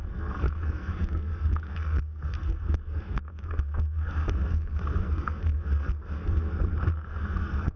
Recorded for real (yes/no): no